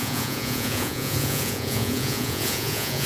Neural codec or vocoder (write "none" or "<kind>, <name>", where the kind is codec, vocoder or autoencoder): vocoder, Vocos